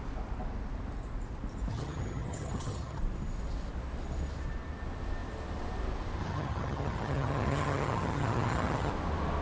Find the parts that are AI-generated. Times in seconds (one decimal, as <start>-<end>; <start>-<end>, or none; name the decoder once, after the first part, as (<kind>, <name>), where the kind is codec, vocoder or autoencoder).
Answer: 1.7-3.0 (vocoder, HiFi-GAN); 6.2-8.9